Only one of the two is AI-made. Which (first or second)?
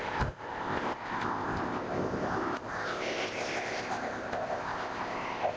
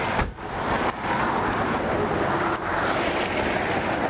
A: first